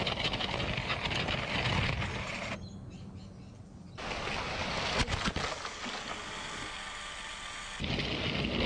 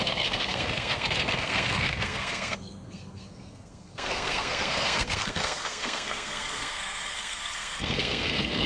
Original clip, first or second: first